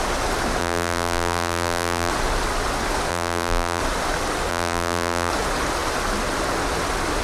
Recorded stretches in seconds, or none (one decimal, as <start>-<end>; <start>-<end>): 0.0-0.6; 2.1-3.1; 3.8-4.5; 5.3-7.2